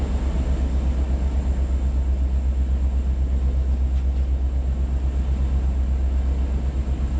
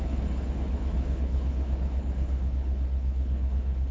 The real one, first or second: first